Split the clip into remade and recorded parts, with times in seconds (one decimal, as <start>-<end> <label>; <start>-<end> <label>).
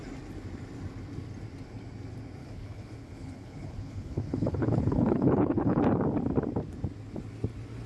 0.0-2.4 recorded; 2.4-5.8 remade; 5.8-7.9 recorded